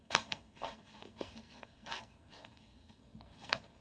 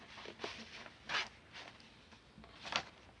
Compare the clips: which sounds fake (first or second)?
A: first